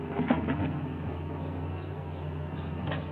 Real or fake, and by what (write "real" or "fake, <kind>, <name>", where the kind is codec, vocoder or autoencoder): fake, codec, SNAC